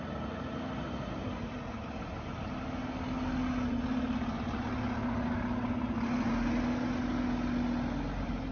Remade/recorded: recorded